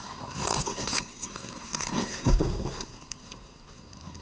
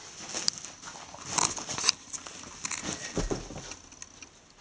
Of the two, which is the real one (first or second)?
second